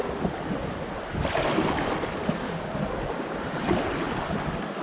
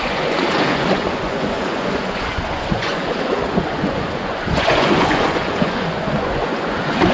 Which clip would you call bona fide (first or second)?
first